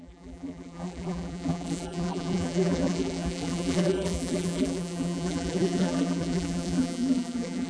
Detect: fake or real fake